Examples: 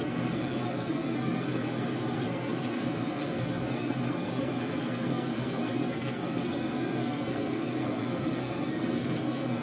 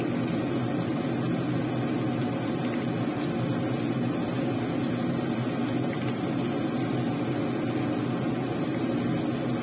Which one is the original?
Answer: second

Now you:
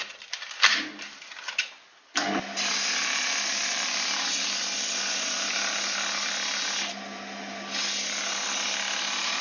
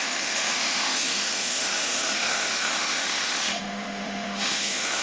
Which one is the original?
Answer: first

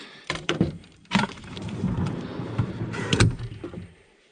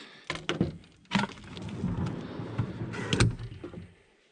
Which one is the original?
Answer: second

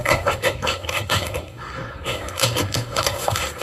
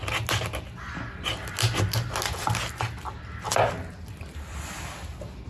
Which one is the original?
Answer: second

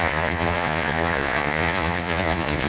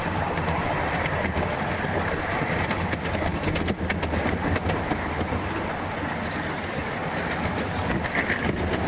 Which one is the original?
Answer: second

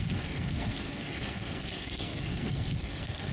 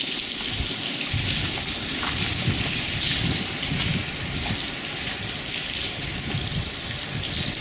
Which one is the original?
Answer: second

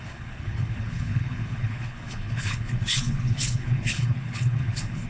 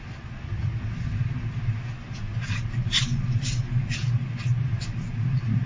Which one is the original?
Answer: second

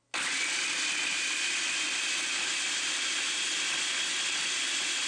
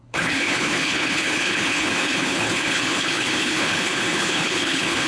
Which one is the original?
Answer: first